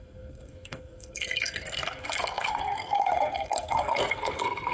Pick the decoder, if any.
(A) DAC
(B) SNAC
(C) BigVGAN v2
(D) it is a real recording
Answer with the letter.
B